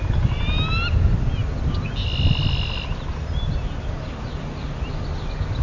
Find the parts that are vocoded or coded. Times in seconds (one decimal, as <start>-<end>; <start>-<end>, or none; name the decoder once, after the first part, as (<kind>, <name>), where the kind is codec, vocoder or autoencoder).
none